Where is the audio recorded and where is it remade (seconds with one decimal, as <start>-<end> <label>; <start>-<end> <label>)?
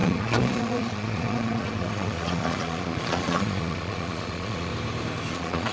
0.0-4.7 remade; 4.7-5.3 recorded; 5.3-5.7 remade